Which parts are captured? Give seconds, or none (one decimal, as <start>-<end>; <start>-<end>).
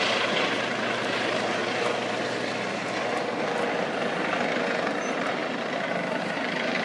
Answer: 1.6-5.0; 5.4-6.2